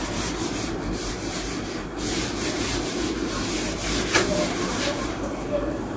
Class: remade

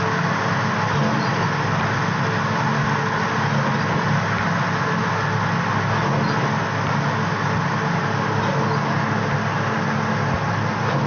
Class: recorded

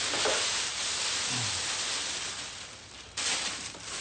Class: recorded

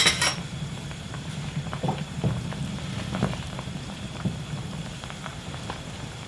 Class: remade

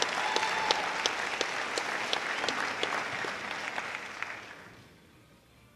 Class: recorded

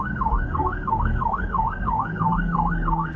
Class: remade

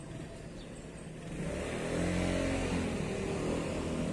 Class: recorded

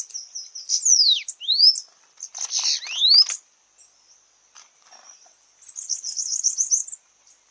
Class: recorded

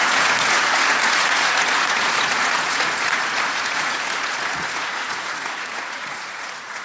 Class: remade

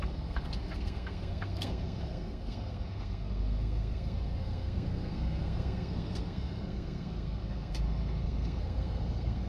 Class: remade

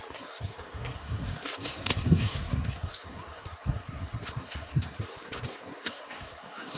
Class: remade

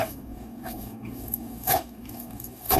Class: remade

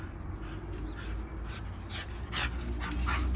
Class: recorded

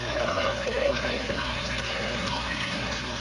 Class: remade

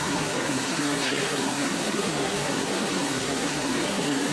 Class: remade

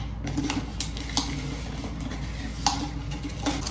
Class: recorded